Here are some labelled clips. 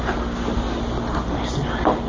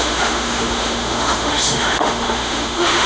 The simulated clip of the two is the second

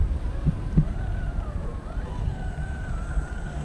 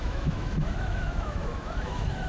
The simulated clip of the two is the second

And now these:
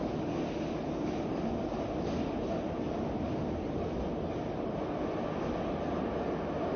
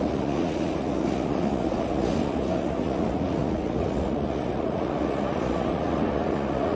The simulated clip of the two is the second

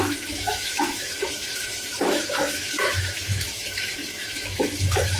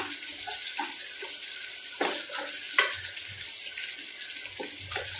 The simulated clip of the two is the first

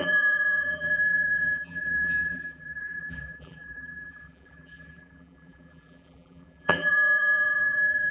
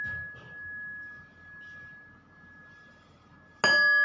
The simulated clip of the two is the first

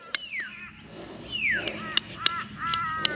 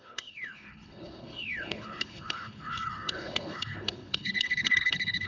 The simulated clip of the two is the second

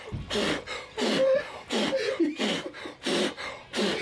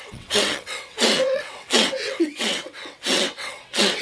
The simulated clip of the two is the second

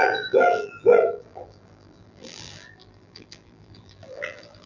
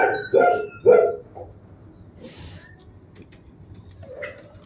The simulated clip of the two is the first